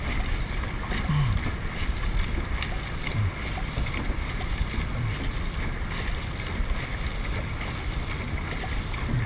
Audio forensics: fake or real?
real